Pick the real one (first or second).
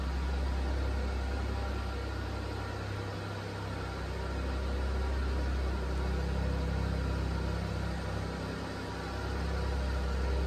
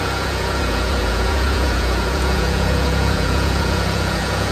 first